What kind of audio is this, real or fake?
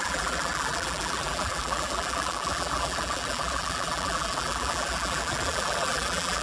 fake